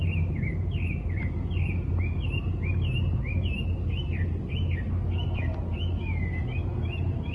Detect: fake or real real